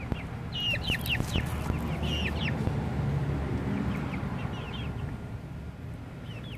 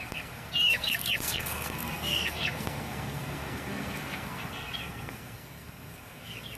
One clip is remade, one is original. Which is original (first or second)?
first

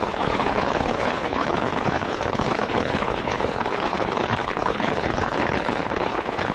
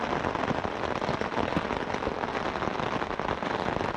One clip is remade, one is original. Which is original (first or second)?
second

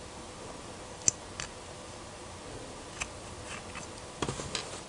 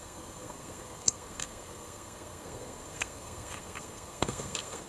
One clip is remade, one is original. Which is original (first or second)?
first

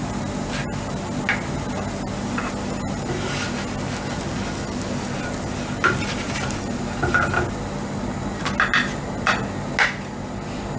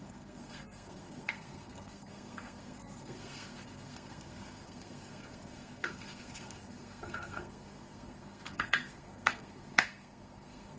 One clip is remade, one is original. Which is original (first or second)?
first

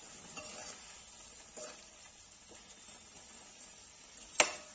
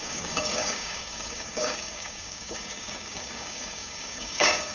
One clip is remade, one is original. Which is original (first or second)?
first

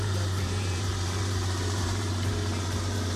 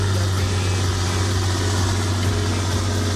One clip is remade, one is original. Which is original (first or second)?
second